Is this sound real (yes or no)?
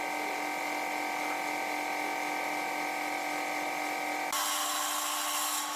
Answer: yes